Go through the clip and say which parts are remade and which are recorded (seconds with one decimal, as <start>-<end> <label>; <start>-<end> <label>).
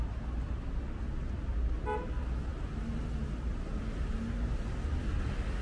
0.0-5.6 recorded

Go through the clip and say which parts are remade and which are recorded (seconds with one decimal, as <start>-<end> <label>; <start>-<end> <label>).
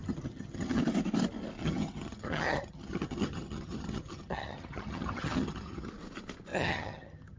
0.0-0.8 remade; 0.8-1.6 recorded; 1.6-5.9 remade; 5.9-6.5 recorded; 6.5-7.4 remade